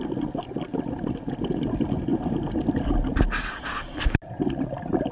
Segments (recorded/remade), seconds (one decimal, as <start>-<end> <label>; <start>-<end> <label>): 0.0-5.1 recorded

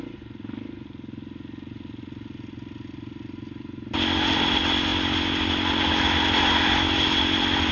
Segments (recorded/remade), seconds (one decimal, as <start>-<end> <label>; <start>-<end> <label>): 0.0-7.7 recorded

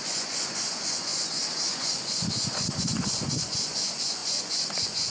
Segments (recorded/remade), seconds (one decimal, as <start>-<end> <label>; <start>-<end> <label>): 0.0-5.1 remade

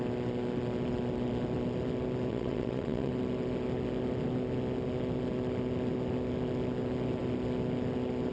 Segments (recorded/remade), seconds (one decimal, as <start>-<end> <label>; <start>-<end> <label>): 0.0-2.3 recorded; 2.3-3.1 remade; 3.1-8.3 recorded